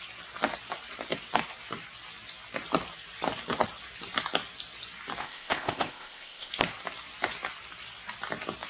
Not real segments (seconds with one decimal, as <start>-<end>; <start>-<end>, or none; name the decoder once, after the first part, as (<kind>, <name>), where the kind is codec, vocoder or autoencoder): 5.2-6.5 (codec, ZipCodec)